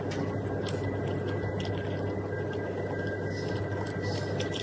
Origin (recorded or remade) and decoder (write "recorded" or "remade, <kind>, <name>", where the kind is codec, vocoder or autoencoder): recorded